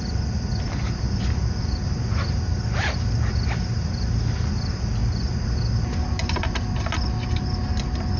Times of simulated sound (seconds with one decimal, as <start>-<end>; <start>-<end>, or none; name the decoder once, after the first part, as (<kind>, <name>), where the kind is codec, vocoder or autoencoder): none